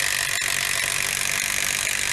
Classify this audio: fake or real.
real